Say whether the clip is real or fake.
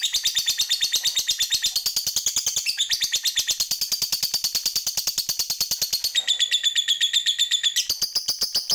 real